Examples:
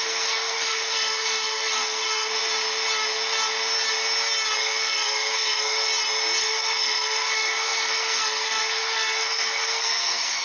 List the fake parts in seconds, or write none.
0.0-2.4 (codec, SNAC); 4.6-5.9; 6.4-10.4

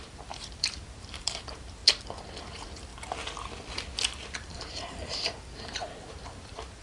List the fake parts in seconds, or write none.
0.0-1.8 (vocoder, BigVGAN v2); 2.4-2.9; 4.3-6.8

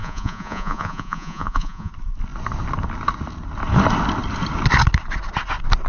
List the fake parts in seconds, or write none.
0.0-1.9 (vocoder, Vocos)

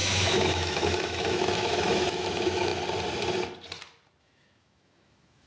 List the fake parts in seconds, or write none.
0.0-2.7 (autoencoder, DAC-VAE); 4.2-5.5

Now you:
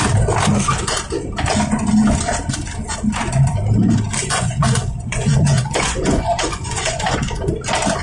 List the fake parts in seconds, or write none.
4.2-7.5 (vocoder, Vocos)